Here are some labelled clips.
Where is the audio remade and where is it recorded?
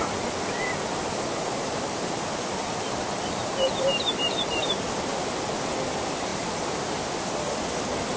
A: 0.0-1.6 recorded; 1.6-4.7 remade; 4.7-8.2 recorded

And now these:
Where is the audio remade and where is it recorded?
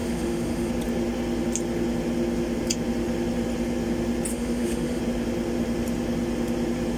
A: 0.0-0.7 remade; 0.7-4.3 recorded; 4.3-5.0 remade; 5.0-7.0 recorded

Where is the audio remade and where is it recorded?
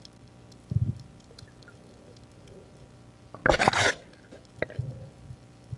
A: 0.0-0.6 recorded; 0.6-1.6 remade; 1.6-5.8 recorded